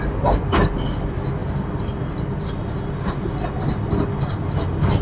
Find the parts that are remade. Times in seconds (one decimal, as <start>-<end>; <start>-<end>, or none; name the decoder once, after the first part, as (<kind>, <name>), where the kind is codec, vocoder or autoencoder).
1.4-2.5 (vocoder, BigVGAN v2)